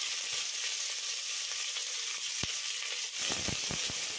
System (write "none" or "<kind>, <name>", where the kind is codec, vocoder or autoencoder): none